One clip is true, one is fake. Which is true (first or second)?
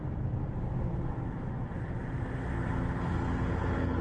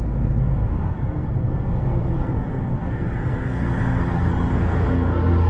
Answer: first